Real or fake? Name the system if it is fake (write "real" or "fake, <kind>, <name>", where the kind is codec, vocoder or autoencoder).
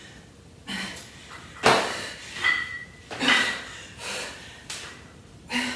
fake, vocoder, BigVGAN v2